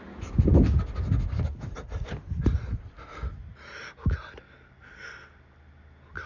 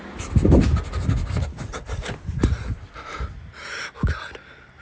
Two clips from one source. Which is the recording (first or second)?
first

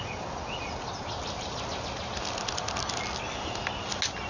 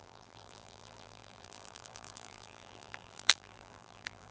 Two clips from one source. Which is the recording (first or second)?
first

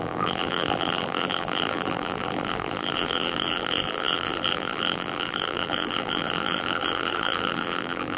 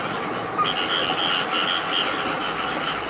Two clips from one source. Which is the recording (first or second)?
second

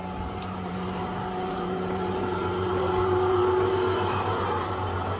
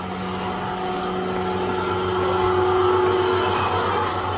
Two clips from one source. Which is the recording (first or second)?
second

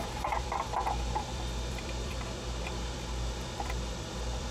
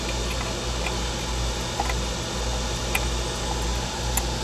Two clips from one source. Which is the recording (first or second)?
second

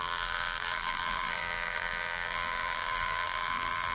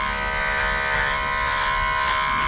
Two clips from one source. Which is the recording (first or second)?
second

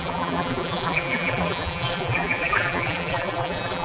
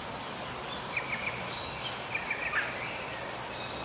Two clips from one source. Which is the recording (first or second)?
second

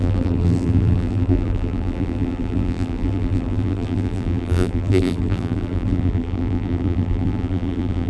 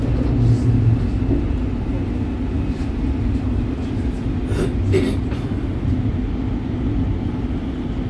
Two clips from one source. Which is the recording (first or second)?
second